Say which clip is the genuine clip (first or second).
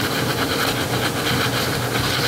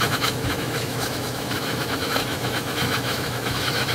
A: first